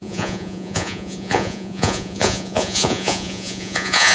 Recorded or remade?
remade